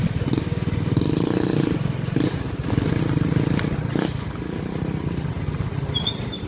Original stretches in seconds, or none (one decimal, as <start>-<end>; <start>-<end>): 0.0-6.5